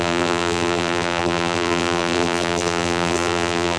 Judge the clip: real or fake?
fake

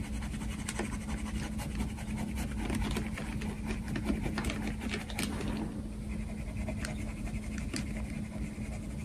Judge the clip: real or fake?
real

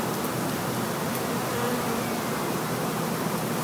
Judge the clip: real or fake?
real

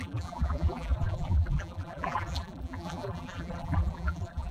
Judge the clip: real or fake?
fake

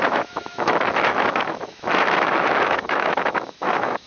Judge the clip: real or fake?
fake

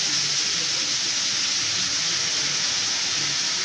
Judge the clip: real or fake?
real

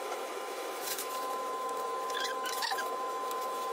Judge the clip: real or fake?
fake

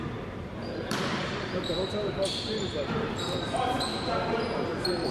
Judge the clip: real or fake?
fake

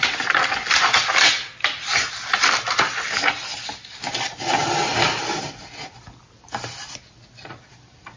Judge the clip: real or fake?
real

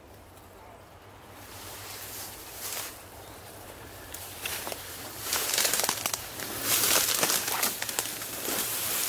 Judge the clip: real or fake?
fake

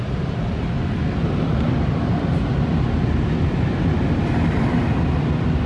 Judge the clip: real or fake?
real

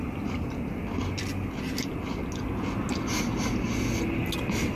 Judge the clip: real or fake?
real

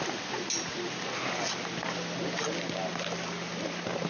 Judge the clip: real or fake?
real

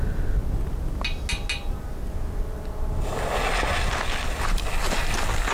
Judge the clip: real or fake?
real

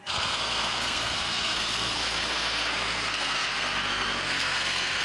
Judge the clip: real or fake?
fake